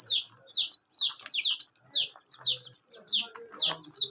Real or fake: real